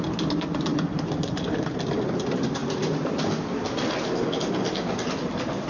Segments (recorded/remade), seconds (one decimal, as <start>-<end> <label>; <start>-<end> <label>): 0.0-0.7 recorded; 0.7-1.9 remade; 1.9-5.7 recorded